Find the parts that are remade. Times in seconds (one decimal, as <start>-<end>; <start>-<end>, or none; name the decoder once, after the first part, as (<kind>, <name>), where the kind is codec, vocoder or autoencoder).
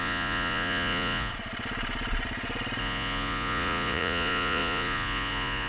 0.0-1.3 (vocoder, Vocos); 2.8-5.7